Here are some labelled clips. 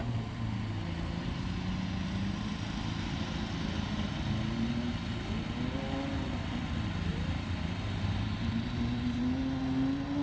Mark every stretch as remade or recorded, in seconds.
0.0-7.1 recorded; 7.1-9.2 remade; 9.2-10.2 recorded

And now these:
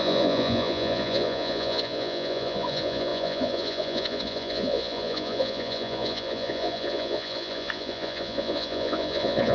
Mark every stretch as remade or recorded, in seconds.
0.0-9.5 remade